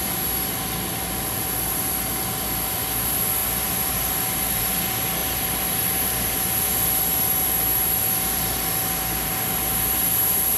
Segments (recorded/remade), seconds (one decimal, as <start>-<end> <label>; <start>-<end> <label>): 0.0-3.4 recorded; 3.4-4.6 remade; 4.6-5.2 recorded; 5.2-6.7 remade; 6.7-10.6 recorded